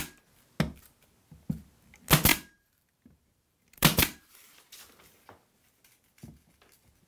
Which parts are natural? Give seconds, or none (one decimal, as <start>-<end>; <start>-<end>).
0.0-2.3; 4.3-7.1